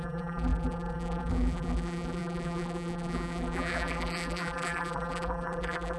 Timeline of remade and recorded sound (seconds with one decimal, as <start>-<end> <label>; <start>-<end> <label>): 0.0-6.0 remade